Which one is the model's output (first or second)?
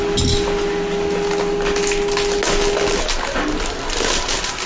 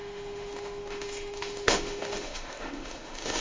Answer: second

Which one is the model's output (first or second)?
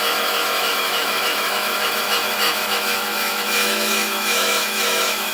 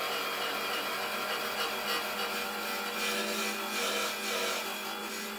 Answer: first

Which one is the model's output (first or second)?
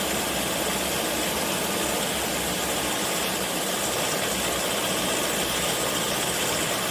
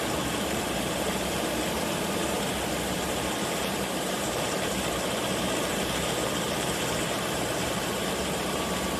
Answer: second